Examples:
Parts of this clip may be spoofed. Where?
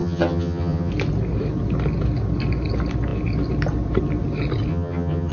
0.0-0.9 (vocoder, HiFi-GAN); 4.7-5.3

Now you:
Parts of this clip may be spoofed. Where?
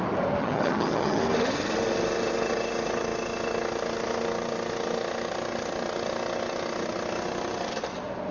0.4-1.2 (vocoder, HiFi-GAN)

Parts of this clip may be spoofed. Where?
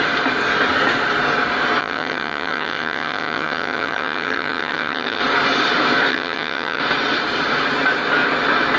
1.8-5.2 (vocoder, HiFi-GAN); 6.1-6.8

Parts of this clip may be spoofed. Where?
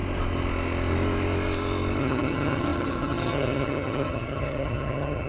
2.0-5.3 (vocoder, HiFi-GAN)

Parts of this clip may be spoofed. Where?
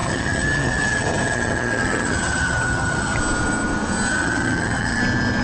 0.0-3.2 (vocoder, HiFi-GAN); 4.1-5.0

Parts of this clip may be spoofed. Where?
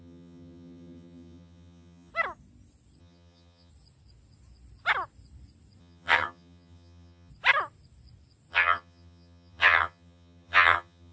0.0-2.1 (vocoder, HiFi-GAN); 3.0-3.7; 5.8-7.3; 8.5-11.1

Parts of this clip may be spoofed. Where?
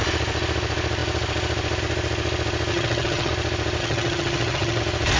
2.7-3.3 (vocoder, HiFi-GAN); 3.8-4.8